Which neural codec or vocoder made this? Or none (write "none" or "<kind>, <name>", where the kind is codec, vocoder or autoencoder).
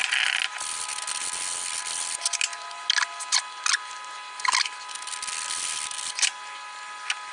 none